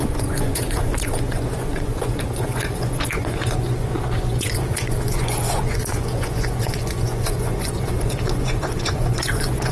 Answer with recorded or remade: remade